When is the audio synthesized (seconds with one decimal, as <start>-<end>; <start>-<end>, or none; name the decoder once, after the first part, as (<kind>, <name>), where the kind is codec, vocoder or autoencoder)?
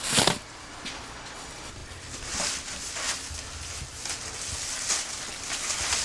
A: none